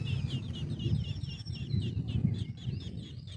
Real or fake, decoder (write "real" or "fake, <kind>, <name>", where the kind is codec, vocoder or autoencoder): real